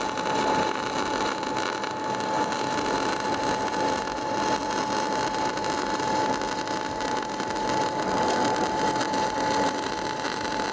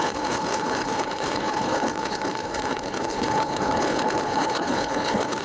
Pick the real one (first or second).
first